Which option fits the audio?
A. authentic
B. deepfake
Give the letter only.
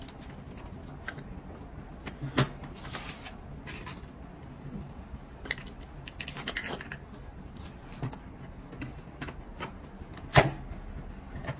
A